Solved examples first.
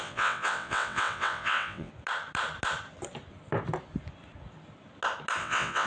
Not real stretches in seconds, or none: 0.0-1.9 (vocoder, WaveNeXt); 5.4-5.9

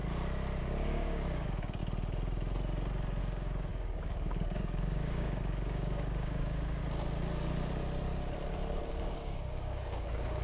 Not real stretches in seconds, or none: 0.6-1.8 (codec, DAC); 3.2-6.8; 8.9-10.4